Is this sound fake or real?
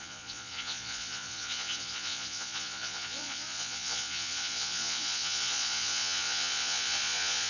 fake